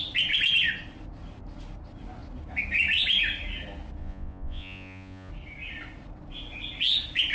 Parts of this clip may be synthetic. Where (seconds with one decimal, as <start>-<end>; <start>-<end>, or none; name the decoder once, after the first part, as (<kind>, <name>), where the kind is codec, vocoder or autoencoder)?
4.0-5.3 (vocoder, Vocos)